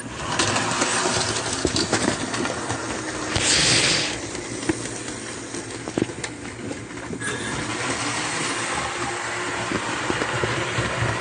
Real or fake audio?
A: real